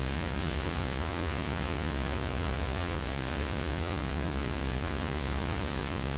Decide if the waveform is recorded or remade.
remade